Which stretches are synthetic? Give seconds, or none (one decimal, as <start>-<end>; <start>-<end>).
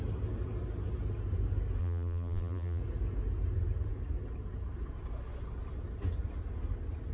1.8-2.8